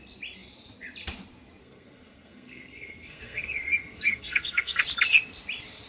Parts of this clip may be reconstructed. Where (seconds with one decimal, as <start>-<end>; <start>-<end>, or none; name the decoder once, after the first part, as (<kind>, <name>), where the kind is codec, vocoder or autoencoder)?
1.6-4.8 (codec, SNAC)